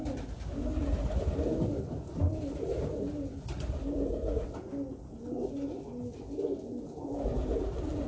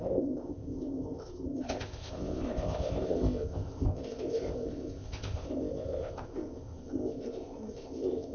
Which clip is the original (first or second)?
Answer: first